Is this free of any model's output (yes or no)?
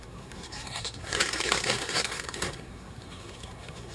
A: no